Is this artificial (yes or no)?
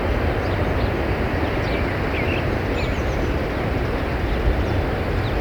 no